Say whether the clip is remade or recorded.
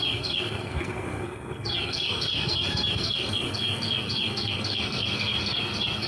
remade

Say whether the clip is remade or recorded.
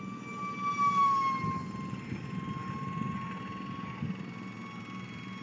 recorded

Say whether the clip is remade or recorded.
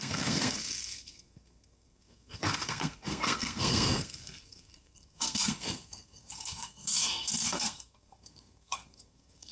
remade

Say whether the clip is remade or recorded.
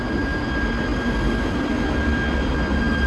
recorded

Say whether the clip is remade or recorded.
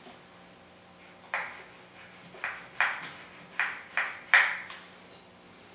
recorded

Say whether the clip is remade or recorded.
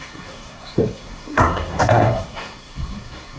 remade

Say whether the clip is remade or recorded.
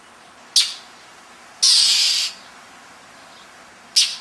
recorded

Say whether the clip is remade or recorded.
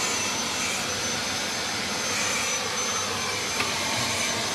recorded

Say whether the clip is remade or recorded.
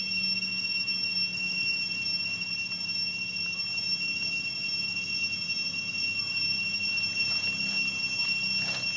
recorded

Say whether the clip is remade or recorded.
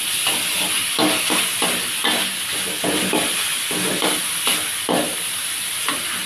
recorded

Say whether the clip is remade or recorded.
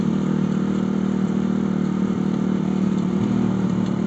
remade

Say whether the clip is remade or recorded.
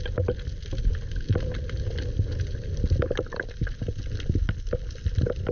recorded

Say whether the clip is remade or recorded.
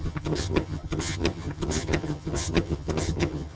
remade